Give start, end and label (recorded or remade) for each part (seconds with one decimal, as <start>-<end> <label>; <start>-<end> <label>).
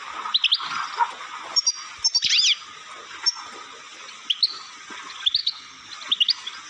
0.0-5.4 recorded; 5.4-5.9 remade; 5.9-6.7 recorded